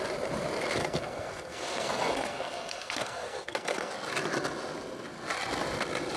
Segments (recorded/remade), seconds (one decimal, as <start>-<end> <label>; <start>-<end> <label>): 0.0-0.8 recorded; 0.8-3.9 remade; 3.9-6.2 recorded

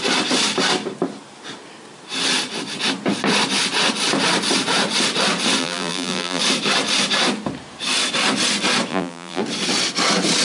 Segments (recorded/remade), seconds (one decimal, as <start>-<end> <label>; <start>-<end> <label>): 0.0-5.6 recorded; 5.6-6.4 remade; 6.4-8.9 recorded; 8.9-9.4 remade; 9.4-10.4 recorded

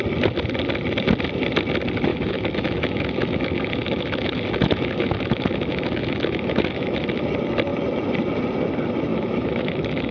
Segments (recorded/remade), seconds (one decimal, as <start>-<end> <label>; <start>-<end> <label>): 0.0-2.1 recorded; 2.1-7.2 remade; 7.2-9.1 recorded; 9.1-10.1 remade